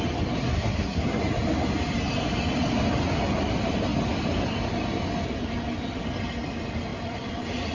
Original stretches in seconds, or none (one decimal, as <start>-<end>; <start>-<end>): 0.0-0.5; 1.2-7.7